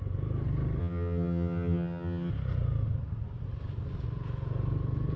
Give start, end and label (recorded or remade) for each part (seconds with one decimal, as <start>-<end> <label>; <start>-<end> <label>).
0.0-0.8 recorded; 0.8-2.3 remade; 2.3-5.2 recorded